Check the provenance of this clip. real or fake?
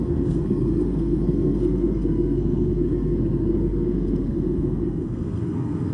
fake